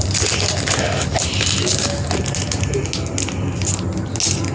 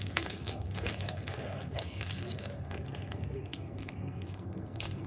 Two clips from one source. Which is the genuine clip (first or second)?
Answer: first